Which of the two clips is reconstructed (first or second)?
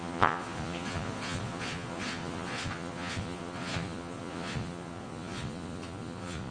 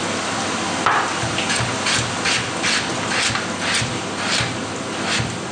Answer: first